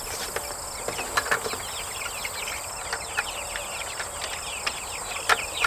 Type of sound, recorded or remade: recorded